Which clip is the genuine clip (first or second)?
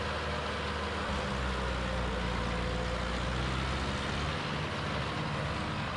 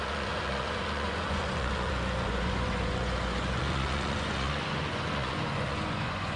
first